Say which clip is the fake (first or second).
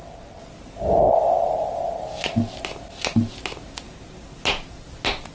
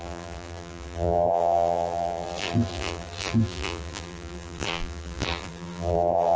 second